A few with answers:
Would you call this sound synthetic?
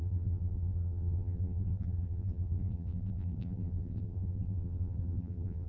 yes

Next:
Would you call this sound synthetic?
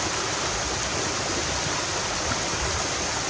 no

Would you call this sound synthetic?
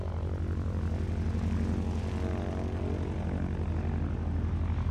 no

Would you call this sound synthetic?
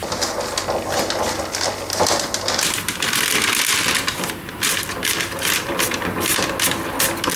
no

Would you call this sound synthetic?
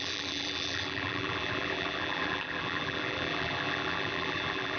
yes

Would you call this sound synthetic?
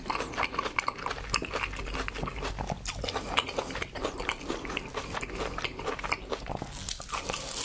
no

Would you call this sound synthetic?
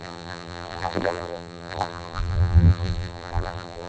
yes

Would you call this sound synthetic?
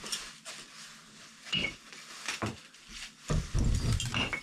yes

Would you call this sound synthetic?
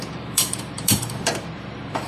yes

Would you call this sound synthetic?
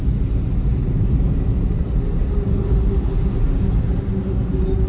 no